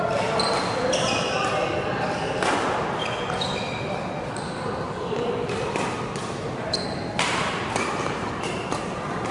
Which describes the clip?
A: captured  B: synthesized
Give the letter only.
A